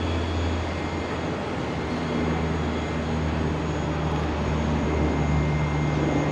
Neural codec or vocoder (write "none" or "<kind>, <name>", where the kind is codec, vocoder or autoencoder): none